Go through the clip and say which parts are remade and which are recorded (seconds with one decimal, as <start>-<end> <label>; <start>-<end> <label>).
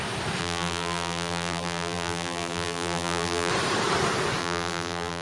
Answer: 0.0-0.4 recorded; 0.4-3.5 remade; 3.5-4.4 recorded; 4.4-5.2 remade